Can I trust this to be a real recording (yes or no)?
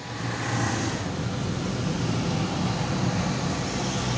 yes